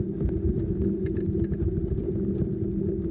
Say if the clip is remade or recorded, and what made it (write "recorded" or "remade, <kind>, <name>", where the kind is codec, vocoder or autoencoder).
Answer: recorded